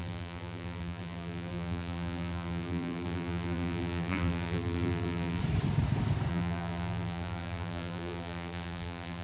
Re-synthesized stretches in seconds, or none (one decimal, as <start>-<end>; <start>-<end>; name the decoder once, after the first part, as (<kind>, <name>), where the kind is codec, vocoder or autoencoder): 0.0-5.4 (vocoder, BigVGAN v2); 6.3-9.2